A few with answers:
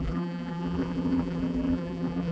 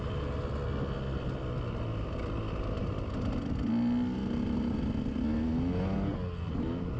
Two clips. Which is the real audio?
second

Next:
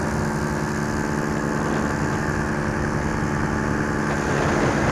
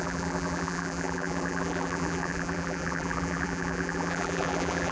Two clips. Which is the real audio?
first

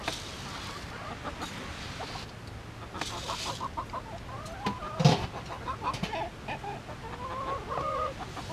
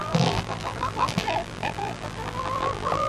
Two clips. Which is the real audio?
first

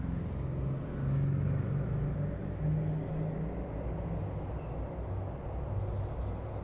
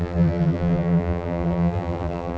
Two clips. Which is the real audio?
first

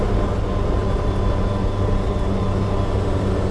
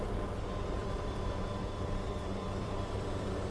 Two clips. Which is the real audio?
first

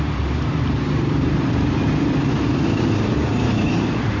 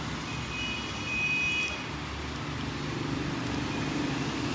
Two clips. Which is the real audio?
second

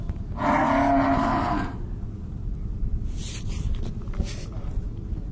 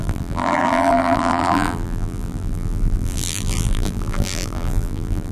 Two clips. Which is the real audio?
first